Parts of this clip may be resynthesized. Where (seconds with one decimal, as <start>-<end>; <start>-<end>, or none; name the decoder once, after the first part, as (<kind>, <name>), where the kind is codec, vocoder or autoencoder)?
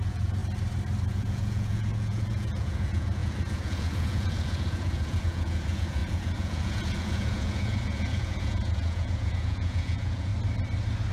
0.0-0.4 (vocoder, Vocos); 1.1-10.3